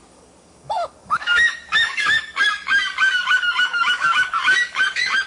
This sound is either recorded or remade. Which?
remade